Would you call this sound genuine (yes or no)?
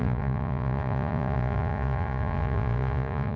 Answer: no